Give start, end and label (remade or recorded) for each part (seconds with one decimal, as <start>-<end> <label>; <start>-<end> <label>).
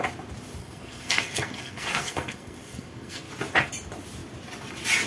0.0-0.6 recorded; 0.6-3.3 remade; 3.3-5.1 recorded